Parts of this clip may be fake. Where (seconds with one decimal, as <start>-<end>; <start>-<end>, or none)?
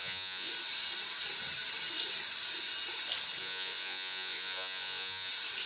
0.0-0.5; 3.4-5.3